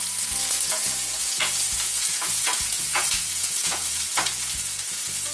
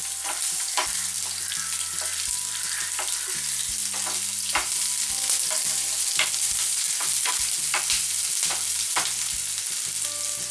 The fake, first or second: first